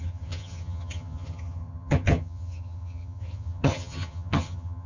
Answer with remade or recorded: remade